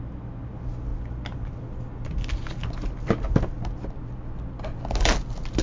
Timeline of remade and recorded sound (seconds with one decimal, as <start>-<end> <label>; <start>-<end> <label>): 0.0-5.6 recorded